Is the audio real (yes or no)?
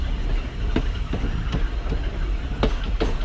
yes